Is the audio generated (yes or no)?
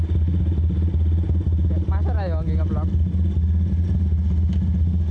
no